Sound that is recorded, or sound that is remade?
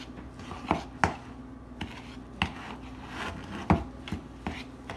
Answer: recorded